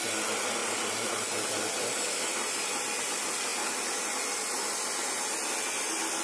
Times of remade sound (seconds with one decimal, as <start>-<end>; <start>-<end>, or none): none